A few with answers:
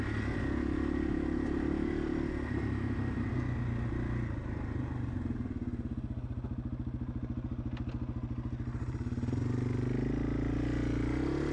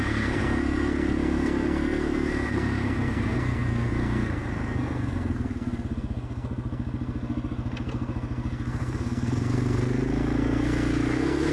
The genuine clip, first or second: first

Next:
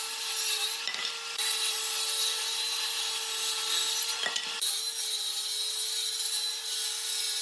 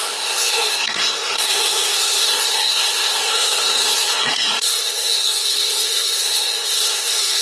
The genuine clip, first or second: first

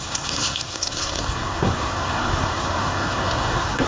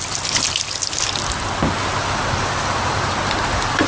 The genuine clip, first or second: second